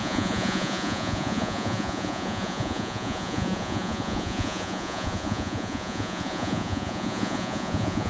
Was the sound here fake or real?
fake